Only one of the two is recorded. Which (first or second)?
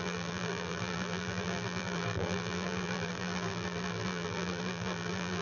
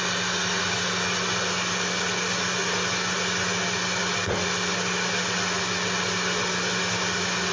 second